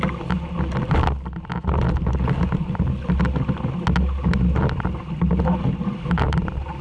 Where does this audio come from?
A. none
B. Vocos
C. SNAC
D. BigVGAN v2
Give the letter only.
A